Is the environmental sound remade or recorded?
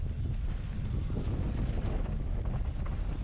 recorded